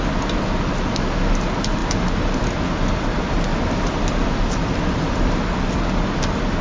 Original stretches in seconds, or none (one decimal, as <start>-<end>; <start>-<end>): 0.0-1.8; 2.4-3.5; 5.5-6.6